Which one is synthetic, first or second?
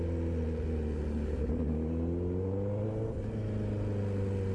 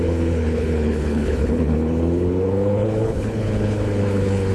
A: second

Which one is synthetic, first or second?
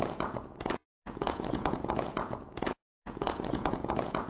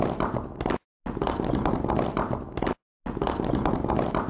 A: first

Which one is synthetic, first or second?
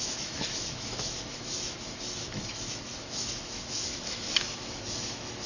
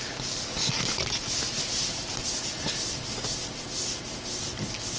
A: first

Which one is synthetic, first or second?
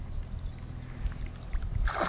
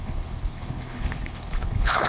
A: second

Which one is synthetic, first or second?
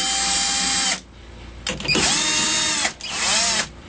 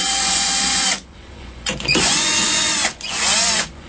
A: second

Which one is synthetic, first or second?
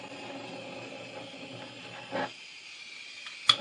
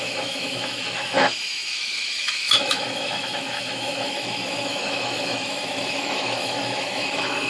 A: second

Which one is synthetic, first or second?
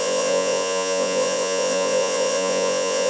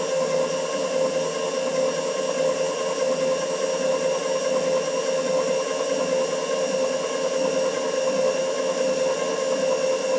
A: first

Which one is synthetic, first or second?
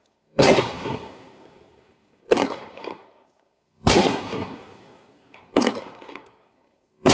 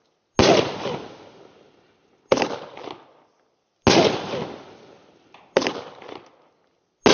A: first